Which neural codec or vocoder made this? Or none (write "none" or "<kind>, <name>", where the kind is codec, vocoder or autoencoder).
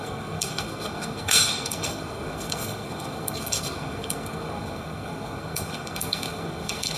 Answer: codec, SNAC